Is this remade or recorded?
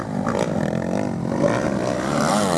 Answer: recorded